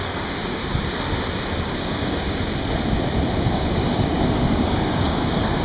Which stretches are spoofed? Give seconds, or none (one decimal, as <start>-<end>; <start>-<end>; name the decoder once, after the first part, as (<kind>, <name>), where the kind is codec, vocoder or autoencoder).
0.0-0.6 (codec, DAC); 1.8-2.3; 3.5-5.6